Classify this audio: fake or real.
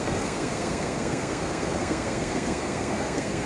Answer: fake